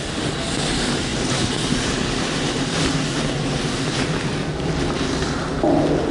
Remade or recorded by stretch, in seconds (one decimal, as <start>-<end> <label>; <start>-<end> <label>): 0.0-1.1 recorded; 1.1-4.8 remade; 4.8-6.1 recorded